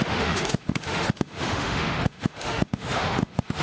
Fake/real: fake